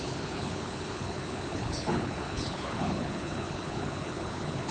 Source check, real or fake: fake